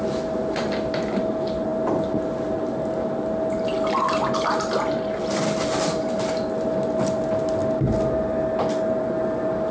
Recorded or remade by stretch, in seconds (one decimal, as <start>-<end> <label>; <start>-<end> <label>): 0.0-9.7 recorded